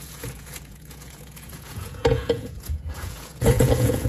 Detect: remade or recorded remade